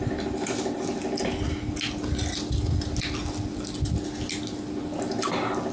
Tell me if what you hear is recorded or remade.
recorded